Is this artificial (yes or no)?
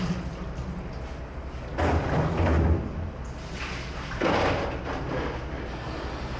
no